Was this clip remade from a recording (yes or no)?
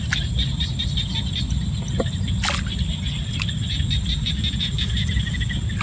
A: no